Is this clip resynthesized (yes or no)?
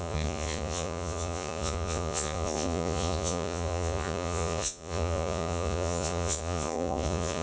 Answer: yes